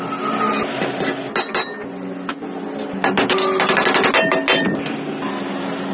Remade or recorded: recorded